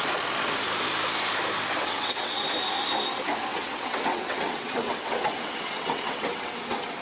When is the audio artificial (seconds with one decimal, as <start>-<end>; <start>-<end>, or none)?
1.8-2.4; 3.5-7.0